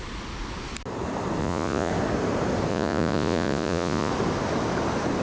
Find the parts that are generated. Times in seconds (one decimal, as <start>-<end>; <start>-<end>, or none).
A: 1.4-1.9; 2.7-4.1